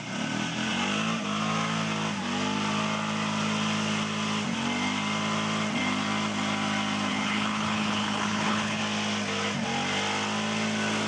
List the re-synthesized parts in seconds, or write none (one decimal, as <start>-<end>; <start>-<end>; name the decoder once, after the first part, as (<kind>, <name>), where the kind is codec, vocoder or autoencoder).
7.1-8.8 (codec, HILCodec)